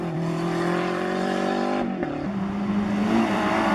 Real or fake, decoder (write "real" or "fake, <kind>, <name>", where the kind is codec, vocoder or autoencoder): fake, vocoder, BigVGAN v2